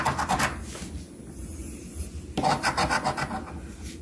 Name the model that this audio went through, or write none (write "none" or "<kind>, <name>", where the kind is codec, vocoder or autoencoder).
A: none